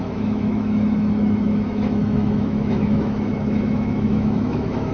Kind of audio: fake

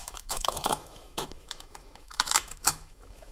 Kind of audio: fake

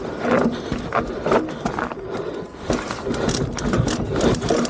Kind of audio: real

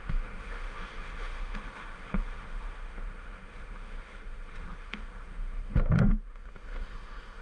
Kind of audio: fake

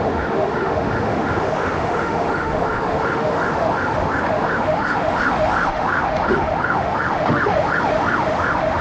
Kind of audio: fake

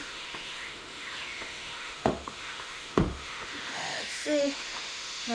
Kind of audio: fake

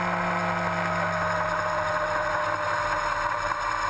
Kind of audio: real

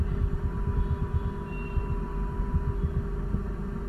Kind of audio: real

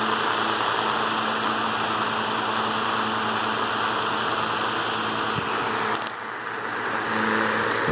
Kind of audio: real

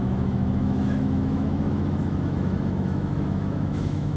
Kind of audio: fake